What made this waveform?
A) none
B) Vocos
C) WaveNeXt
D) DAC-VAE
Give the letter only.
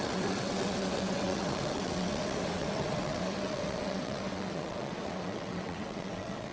C